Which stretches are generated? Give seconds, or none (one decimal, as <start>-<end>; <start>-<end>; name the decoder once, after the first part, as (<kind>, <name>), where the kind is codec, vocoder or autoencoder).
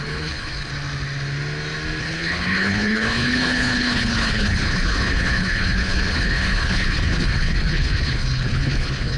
0.0-0.7 (codec, HILCodec); 2.0-9.2